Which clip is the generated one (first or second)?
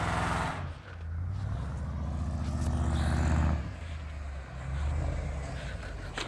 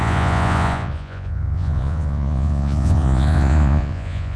second